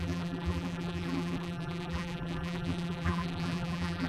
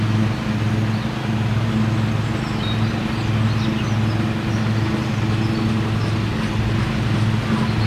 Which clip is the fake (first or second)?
first